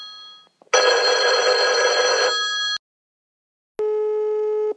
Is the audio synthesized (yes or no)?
no